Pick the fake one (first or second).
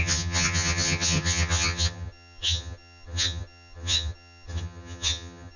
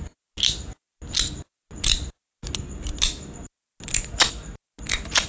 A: first